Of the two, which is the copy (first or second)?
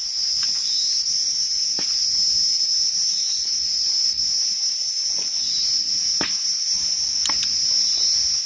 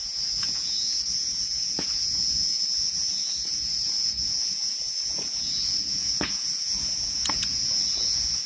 second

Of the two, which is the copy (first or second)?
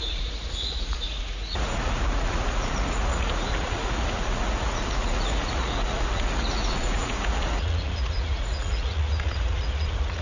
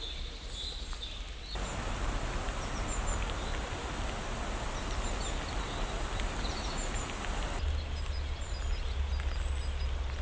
first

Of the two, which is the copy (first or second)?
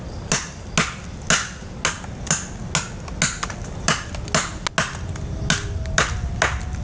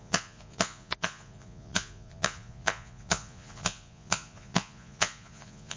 second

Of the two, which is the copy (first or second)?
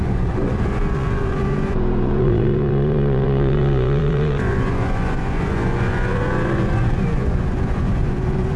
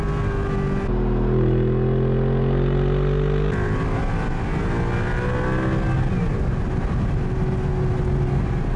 first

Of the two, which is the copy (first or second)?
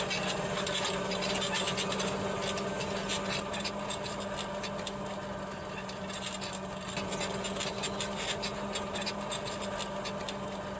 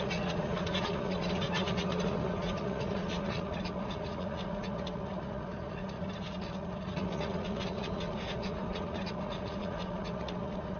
second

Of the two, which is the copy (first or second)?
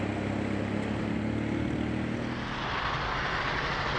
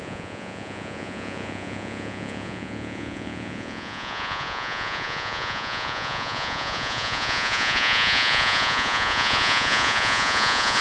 second